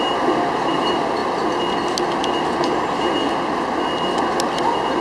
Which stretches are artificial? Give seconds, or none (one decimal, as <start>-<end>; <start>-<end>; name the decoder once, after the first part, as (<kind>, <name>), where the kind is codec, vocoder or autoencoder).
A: 0.0-1.2 (vocoder, BigVGAN v2); 4.2-5.0

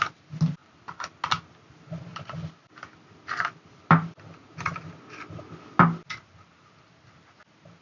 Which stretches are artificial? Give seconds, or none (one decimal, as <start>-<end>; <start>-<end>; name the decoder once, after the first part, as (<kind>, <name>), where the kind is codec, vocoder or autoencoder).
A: 0.6-1.2 (vocoder, BigVGAN v2); 2.1-4.9

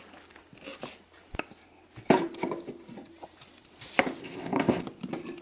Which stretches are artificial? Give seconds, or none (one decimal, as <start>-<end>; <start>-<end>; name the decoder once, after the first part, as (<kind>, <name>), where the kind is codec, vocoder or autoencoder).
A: 4.2-4.8 (codec, ZipCodec)

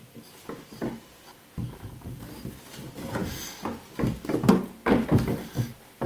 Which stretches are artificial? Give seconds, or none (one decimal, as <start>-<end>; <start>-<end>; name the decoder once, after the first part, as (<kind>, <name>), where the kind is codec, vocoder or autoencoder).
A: 1.6-2.2 (codec, DAC)

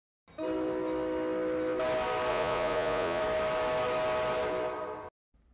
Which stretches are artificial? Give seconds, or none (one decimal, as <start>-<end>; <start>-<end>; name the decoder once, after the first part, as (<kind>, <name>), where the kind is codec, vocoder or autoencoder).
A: 2.3-3.2 (vocoder, Vocos)